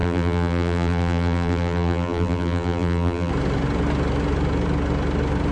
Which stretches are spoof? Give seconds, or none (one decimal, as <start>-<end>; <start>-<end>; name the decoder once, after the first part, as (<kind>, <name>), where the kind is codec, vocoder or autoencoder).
0.0-3.3 (vocoder, BigVGAN v2)